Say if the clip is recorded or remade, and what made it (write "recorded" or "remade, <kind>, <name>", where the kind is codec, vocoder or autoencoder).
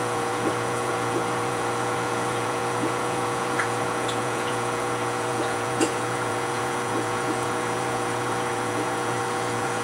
remade, vocoder, Vocos